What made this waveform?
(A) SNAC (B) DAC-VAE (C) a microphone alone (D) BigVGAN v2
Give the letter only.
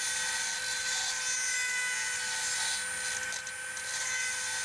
C